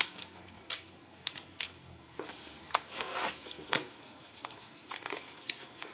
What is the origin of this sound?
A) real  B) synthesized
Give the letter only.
B